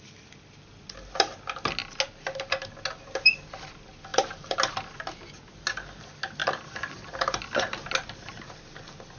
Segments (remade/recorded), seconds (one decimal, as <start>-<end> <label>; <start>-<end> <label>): 0.0-4.1 recorded; 4.1-4.6 remade; 4.6-9.2 recorded